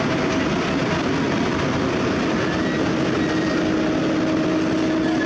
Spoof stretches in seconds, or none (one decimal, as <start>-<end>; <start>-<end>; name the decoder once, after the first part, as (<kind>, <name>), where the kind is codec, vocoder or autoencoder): none